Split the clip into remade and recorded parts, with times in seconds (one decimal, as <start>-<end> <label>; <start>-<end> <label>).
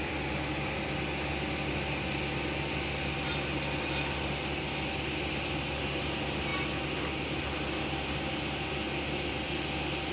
0.0-10.1 recorded